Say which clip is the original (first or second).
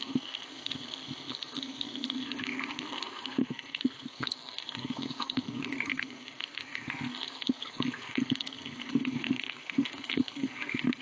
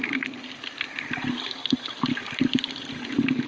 second